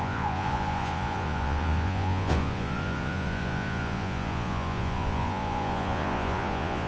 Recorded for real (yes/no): no